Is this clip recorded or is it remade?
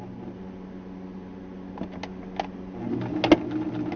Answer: recorded